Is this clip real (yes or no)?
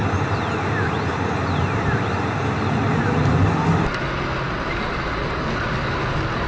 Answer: yes